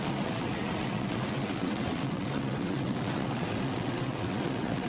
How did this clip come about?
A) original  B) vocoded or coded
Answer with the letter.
B